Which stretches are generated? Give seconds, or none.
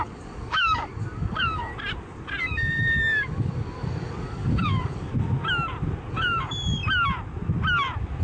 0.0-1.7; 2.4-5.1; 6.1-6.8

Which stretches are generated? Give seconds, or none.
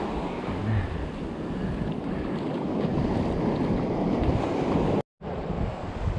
0.0-0.6; 1.3-2.9; 5.7-6.2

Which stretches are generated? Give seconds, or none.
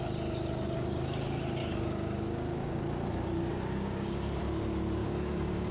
1.6-2.8; 3.5-4.4; 5.0-5.7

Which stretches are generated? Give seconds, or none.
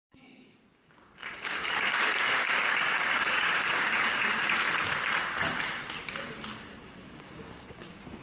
0.0-4.6; 7.2-8.2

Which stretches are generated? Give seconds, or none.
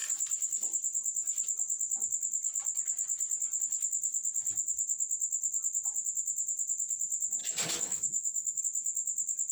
7.4-8.6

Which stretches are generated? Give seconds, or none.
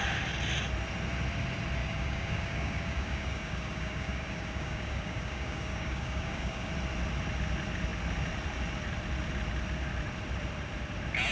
1.8-6.7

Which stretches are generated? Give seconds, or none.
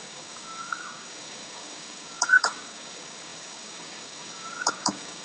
0.0-5.2